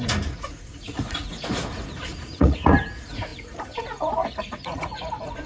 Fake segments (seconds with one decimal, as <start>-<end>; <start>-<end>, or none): 0.0-5.5